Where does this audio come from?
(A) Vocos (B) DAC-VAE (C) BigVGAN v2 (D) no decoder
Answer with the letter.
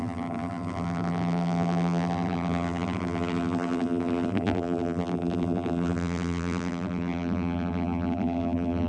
C